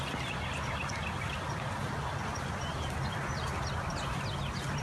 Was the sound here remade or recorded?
recorded